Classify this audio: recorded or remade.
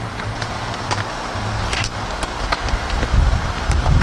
recorded